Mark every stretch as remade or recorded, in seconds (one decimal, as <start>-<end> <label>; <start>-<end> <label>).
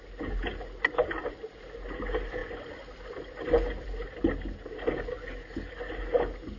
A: 0.0-6.6 recorded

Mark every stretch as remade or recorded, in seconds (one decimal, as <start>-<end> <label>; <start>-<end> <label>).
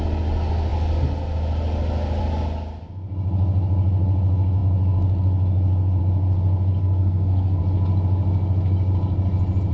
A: 0.0-6.8 recorded; 6.8-7.6 remade; 7.6-9.7 recorded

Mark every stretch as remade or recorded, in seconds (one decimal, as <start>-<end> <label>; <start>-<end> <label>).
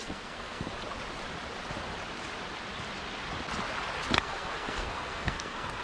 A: 0.0-0.7 remade; 0.7-4.2 recorded; 4.2-5.8 remade